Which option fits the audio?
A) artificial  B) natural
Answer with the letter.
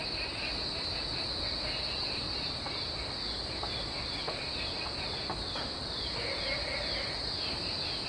B